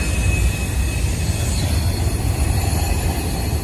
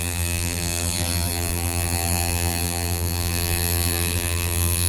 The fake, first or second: second